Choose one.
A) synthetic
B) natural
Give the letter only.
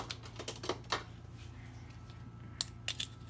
B